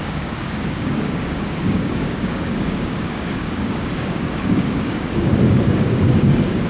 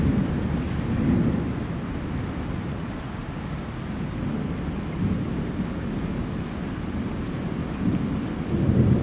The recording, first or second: second